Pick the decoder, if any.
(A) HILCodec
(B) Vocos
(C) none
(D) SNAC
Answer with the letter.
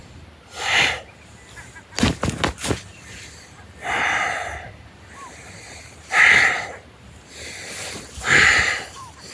C